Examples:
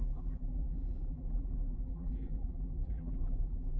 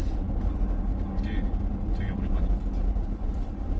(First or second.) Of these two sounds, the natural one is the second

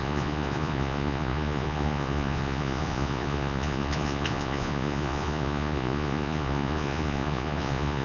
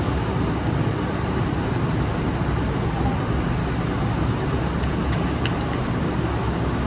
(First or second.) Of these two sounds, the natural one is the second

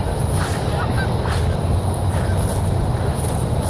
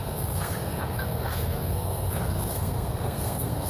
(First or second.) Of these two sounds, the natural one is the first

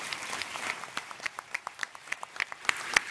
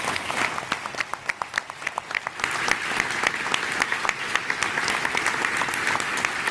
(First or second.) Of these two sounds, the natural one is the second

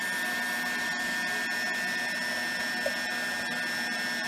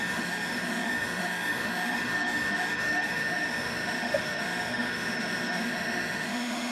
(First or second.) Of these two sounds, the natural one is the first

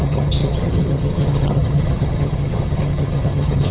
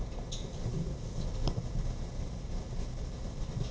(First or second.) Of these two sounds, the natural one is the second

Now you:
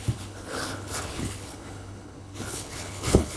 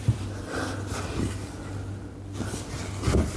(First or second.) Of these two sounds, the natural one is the second